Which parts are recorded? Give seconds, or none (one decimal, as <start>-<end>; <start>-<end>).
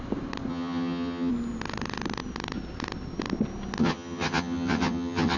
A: 0.0-0.5; 1.3-3.8